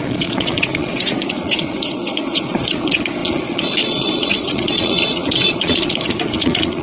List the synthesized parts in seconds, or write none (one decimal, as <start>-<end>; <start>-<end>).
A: 0.0-6.8